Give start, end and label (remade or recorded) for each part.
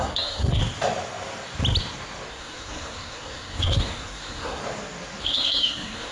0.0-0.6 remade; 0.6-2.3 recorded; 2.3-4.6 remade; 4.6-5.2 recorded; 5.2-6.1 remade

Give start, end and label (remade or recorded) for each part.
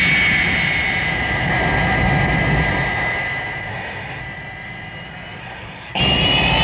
0.0-3.7 recorded; 3.7-4.2 remade; 4.2-5.4 recorded; 5.4-6.0 remade; 6.0-6.6 recorded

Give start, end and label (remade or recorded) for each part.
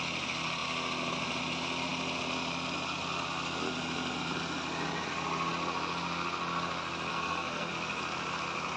0.0-7.1 recorded; 7.1-7.7 remade; 7.7-8.8 recorded